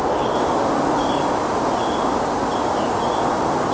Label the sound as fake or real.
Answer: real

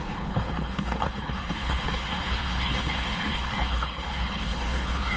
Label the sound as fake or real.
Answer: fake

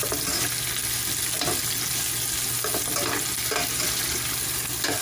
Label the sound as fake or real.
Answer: real